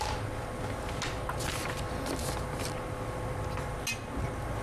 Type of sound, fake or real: real